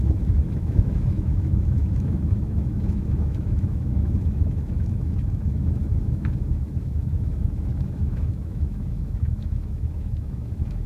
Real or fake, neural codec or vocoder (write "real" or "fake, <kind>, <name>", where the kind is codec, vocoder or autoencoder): fake, autoencoder, DAC-VAE